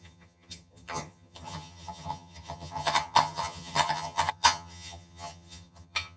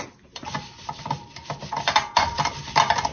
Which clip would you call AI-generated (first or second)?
first